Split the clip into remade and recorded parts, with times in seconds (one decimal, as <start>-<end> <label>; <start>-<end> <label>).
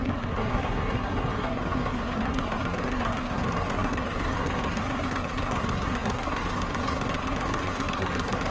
0.0-8.5 remade